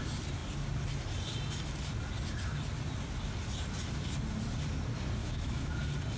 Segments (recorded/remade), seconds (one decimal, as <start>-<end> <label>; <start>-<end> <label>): 0.0-5.2 recorded; 5.2-5.7 remade; 5.7-6.2 recorded